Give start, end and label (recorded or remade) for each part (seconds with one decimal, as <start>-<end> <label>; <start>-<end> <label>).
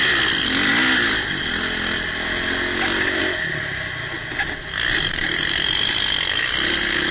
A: 0.0-7.1 recorded